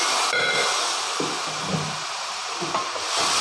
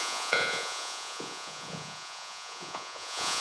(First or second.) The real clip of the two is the first